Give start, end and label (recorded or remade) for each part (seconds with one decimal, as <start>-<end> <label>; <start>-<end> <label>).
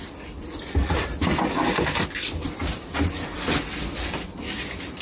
0.0-5.0 recorded